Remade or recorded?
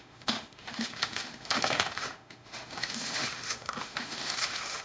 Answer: remade